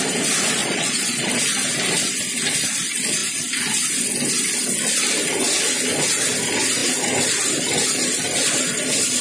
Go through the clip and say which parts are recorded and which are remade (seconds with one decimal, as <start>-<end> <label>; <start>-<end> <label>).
0.0-0.6 recorded; 0.6-1.3 remade; 1.3-9.2 recorded